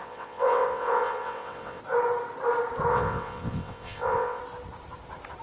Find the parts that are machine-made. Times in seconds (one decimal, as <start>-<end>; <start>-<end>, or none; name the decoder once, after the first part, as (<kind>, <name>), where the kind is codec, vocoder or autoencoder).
0.0-1.8 (vocoder, WaveNeXt); 2.9-4.4